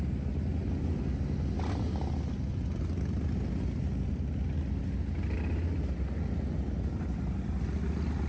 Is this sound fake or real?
real